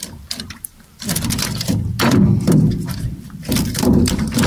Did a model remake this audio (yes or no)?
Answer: yes